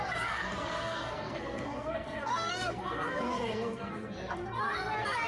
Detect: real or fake fake